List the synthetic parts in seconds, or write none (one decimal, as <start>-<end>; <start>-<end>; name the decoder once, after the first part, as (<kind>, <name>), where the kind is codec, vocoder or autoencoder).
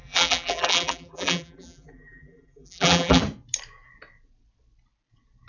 0.0-3.2 (vocoder, BigVGAN v2)